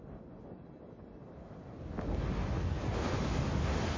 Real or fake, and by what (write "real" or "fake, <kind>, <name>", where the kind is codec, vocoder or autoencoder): real